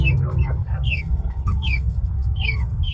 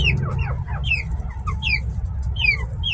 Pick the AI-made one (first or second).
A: first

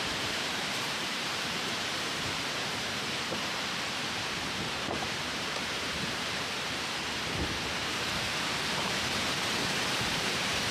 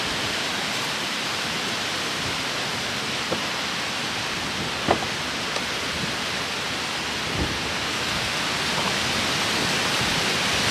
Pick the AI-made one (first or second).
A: first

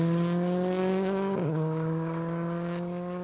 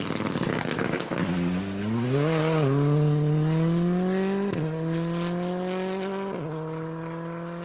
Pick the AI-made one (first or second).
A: first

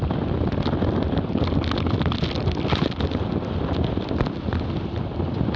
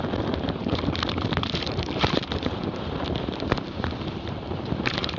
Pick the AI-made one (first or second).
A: second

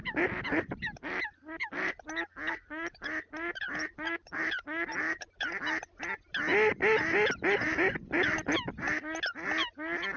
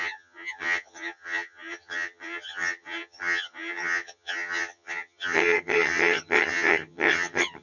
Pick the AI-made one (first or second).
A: second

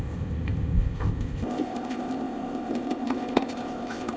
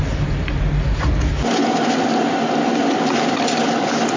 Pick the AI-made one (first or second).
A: first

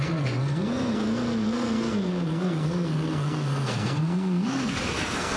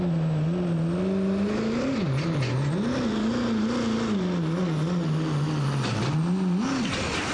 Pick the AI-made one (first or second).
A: first